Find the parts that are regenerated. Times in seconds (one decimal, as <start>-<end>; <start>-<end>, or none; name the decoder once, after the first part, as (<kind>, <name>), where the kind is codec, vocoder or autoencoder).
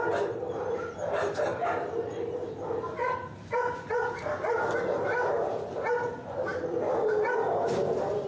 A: 3.0-3.9 (vocoder, BigVGAN v2); 6.5-7.2